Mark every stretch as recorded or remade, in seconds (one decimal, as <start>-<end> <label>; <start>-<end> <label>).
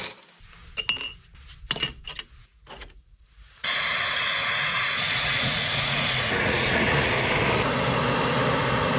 0.0-2.4 recorded; 2.4-7.1 remade; 7.1-9.0 recorded